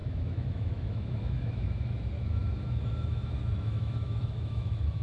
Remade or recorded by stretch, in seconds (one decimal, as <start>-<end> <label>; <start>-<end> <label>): 0.0-5.0 remade